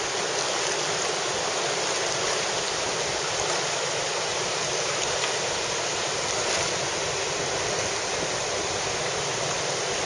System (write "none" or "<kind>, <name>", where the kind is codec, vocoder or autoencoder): none